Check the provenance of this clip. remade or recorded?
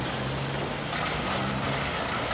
recorded